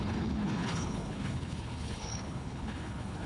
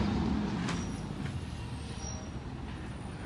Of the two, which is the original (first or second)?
second